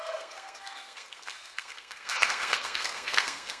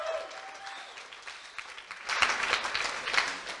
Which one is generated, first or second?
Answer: first